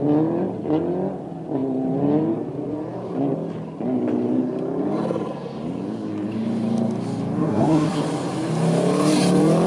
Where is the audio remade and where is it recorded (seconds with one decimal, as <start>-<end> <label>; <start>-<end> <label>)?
0.0-7.4 recorded; 7.4-8.0 remade; 8.0-9.7 recorded